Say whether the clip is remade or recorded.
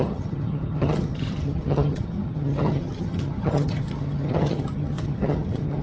remade